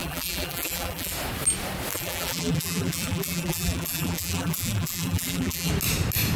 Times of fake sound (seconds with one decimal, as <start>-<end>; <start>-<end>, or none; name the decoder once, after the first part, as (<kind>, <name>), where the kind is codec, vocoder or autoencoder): 0.0-1.1 (vocoder, BigVGAN v2); 1.9-5.7